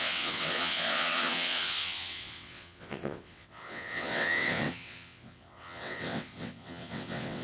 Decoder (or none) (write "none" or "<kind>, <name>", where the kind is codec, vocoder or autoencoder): vocoder, WaveNeXt